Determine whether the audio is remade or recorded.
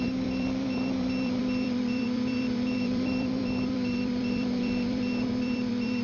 remade